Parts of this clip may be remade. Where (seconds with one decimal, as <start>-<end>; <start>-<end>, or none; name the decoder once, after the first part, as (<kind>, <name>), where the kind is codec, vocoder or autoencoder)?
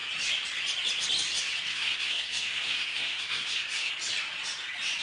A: 1.7-3.9 (codec, SNAC)